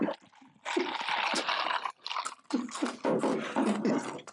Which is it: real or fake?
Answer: real